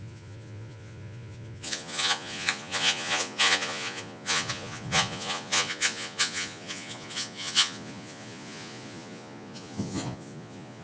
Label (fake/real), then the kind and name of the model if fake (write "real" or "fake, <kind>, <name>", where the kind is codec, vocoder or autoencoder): fake, vocoder, Vocos